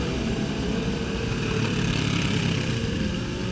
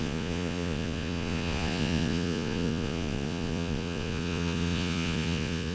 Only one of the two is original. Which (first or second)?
first